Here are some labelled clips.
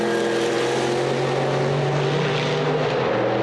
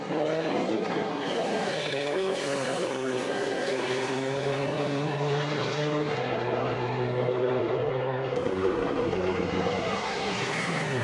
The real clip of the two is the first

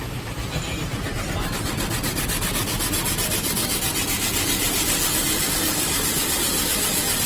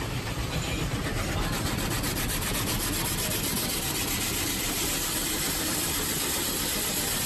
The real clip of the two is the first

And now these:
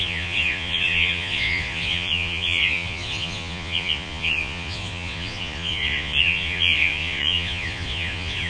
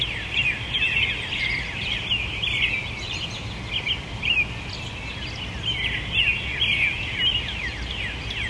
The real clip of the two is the second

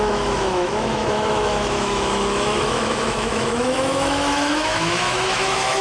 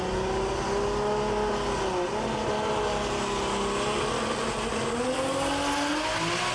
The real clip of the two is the second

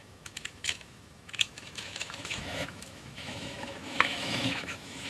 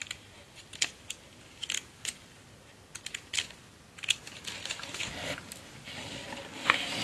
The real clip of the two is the second